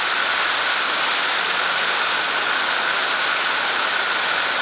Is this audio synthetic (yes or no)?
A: no